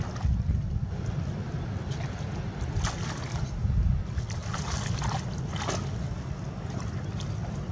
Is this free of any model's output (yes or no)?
yes